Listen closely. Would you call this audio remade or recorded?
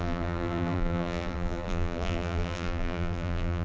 remade